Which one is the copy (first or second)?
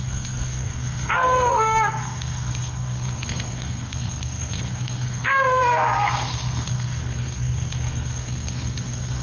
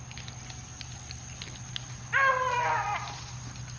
first